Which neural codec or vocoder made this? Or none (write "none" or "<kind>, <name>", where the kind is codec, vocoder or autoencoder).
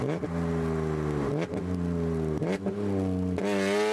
none